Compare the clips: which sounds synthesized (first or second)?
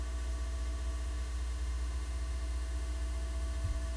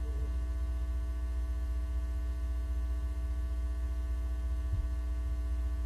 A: first